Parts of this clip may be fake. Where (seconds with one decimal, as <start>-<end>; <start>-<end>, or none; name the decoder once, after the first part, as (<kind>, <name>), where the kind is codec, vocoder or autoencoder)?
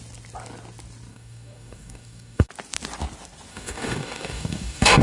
1.1-2.5 (codec, DAC); 3.5-5.0